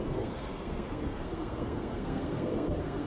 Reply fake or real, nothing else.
fake